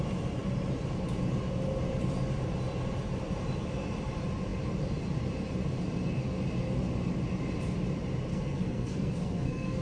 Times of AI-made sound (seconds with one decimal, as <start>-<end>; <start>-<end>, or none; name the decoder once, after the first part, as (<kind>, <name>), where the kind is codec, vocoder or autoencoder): 8.3-9.8 (codec, SNAC)